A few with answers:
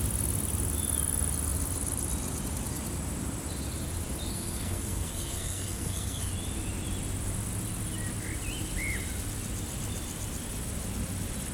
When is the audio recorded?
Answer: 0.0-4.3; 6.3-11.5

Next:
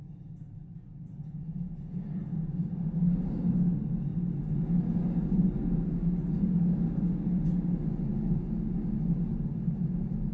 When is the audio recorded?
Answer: 0.0-10.3

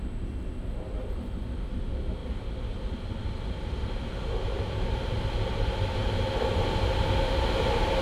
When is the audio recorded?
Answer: 0.0-2.2; 4.1-8.0

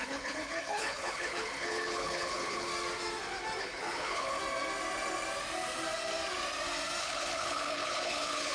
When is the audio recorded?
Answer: 2.7-3.6; 4.4-7.0

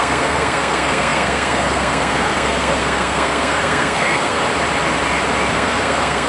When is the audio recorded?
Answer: 4.4-5.5

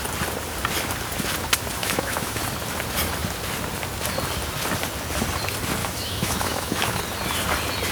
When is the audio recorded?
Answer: 0.0-1.8; 2.4-5.8; 7.0-7.9